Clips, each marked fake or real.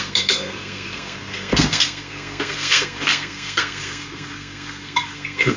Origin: fake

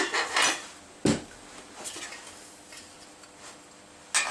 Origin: real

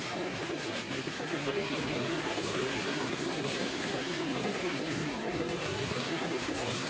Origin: fake